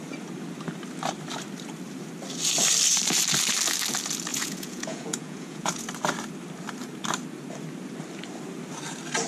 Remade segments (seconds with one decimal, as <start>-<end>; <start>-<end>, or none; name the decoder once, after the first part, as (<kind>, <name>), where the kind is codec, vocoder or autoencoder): 4.3-5.7 (vocoder, Vocos)